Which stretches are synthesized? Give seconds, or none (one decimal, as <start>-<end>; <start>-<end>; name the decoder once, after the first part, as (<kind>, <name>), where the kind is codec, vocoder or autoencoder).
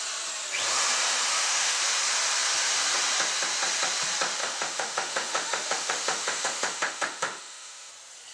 1.3-1.8 (autoencoder, DAC-VAE); 4.4-7.9